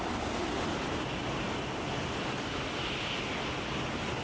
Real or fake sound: real